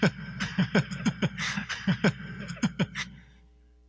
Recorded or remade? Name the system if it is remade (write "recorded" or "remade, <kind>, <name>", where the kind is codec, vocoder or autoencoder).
recorded